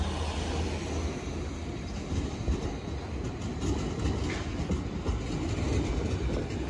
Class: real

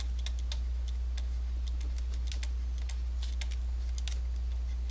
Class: real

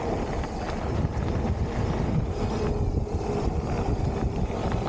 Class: real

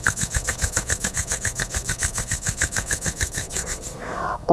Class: fake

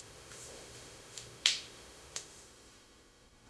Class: fake